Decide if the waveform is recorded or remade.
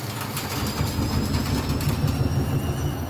recorded